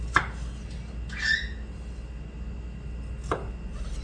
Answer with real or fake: real